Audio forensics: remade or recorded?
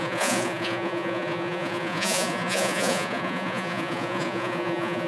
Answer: remade